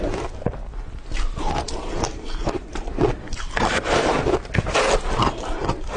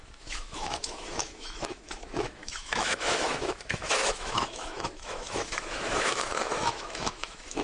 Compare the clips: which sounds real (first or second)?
first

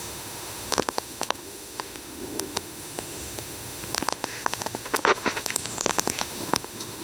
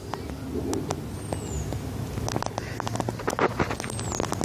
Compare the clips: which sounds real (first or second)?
second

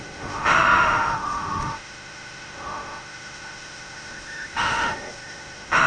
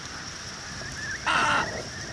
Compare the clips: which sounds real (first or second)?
second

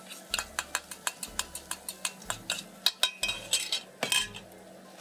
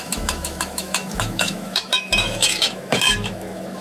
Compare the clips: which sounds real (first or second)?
first